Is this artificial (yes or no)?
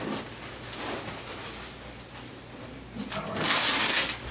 no